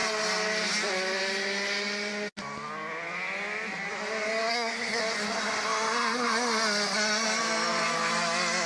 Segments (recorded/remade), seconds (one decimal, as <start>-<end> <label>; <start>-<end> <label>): 0.0-4.5 recorded; 4.5-5.0 remade; 5.0-8.7 recorded